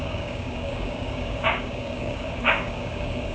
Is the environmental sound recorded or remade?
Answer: remade